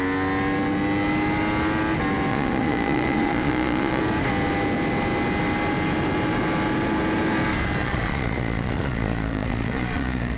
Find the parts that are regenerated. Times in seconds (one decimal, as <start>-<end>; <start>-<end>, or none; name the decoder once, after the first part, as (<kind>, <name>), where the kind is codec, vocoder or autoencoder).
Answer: 2.3-4.0 (vocoder, Vocos); 7.8-10.4